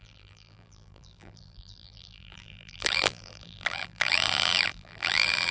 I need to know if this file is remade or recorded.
remade